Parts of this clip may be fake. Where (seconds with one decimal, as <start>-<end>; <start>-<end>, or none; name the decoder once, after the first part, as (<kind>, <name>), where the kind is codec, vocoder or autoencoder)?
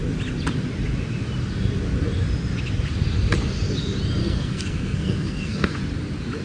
4.2-5.8 (codec, SNAC)